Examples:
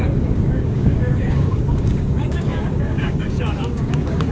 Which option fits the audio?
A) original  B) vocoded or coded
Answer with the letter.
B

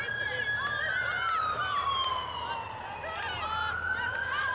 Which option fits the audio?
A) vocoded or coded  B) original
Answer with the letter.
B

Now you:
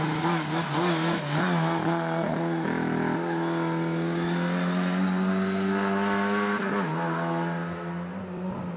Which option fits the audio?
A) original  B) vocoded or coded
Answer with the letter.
A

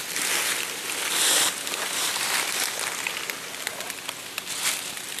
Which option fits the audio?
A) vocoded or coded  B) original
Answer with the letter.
B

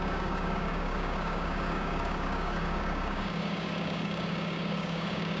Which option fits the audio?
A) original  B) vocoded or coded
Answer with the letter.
B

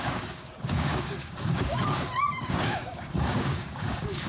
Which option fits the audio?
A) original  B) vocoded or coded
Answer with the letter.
B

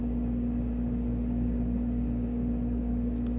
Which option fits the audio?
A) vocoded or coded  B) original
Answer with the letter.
A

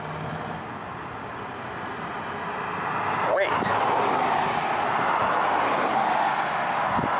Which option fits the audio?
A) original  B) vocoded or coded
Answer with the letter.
A